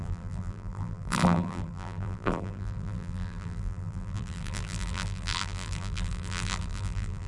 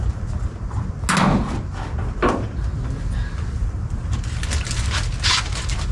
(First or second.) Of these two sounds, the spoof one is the first